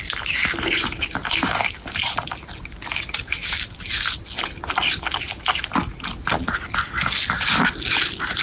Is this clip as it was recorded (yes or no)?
yes